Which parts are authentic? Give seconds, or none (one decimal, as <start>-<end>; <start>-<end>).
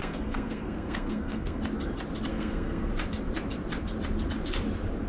1.6-2.3; 2.9-5.1